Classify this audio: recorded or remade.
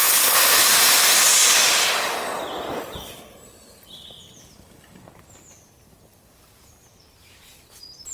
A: recorded